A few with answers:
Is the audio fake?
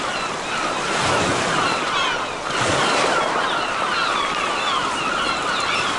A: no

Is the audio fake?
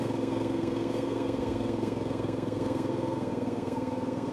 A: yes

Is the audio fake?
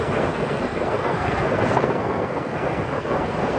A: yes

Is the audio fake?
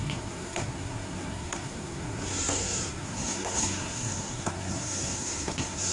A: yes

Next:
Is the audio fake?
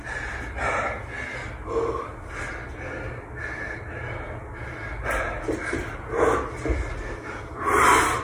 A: no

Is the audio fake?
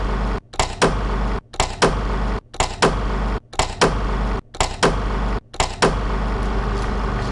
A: no